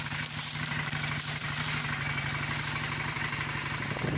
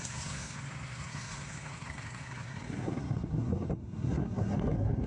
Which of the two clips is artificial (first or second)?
second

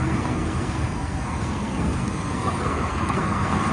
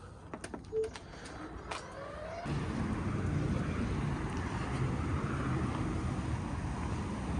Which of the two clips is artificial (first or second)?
first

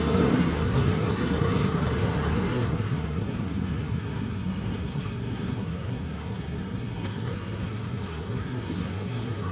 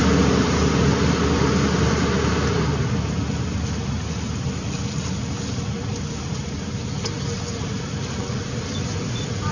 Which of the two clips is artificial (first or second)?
first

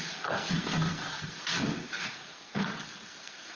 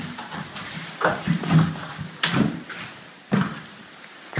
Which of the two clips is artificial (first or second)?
first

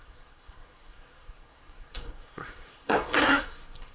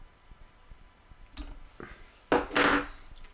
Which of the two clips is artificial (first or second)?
first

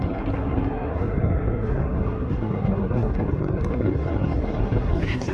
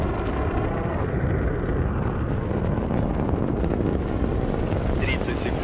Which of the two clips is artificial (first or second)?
first